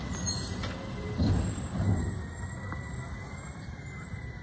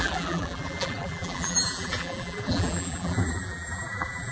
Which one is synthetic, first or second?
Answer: second